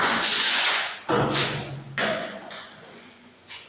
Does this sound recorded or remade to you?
remade